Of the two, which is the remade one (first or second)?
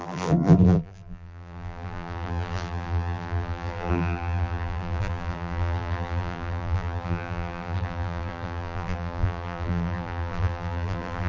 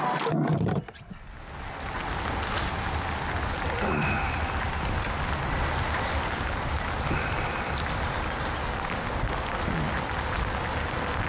first